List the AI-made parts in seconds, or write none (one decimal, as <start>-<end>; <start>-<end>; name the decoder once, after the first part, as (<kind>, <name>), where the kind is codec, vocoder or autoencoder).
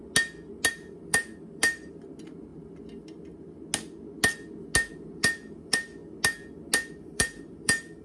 0.7-2.5 (vocoder, BigVGAN v2); 4.9-6.0; 6.9-8.0